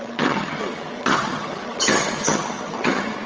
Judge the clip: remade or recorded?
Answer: remade